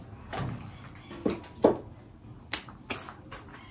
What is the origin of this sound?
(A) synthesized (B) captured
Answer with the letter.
B